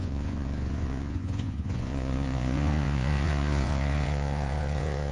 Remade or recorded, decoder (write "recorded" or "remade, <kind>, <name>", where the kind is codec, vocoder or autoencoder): remade, vocoder, Vocos